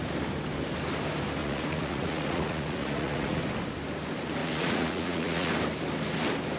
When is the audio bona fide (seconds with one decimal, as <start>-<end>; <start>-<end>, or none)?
0.0-1.4; 3.4-4.4; 5.5-6.6